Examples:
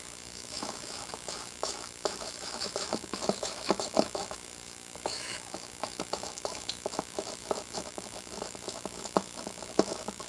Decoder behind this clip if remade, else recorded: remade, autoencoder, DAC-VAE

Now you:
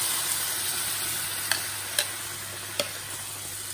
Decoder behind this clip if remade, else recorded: recorded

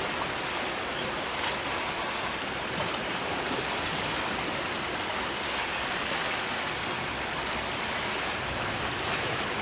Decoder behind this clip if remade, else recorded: recorded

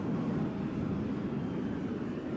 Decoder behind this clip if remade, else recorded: recorded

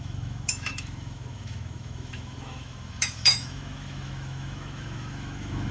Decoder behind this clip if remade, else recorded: remade, autoencoder, DAC-VAE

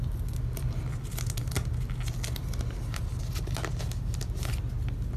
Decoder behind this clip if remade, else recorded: recorded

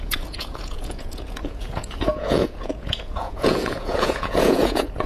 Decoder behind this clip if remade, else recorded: remade, vocoder, Vocos